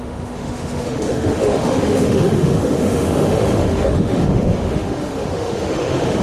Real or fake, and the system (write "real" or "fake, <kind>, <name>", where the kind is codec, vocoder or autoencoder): fake, autoencoder, DAC-VAE